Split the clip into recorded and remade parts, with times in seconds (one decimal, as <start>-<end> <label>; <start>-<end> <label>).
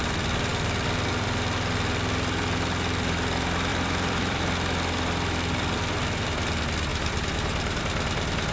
0.0-3.7 recorded; 3.7-4.4 remade; 4.4-6.9 recorded; 6.9-7.8 remade; 7.8-8.5 recorded